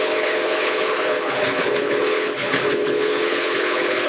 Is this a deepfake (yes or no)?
yes